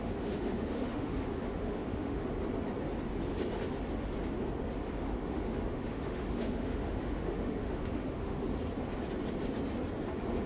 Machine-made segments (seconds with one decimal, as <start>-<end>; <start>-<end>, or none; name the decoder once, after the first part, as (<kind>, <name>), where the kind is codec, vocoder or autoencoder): 0.0-2.2 (autoencoder, DAC-VAE); 5.2-8.5